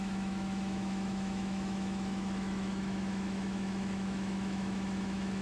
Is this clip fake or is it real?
fake